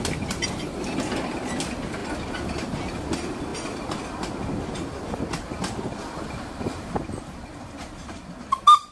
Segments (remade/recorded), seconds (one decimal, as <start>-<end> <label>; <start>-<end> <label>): 0.0-8.9 recorded